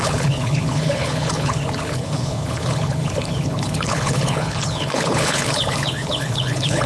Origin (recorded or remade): remade